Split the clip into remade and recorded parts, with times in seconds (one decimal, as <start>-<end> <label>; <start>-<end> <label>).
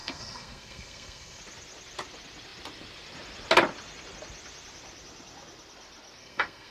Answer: 0.0-1.4 remade; 1.4-6.2 recorded; 6.2-6.7 remade